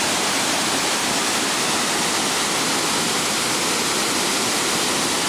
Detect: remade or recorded recorded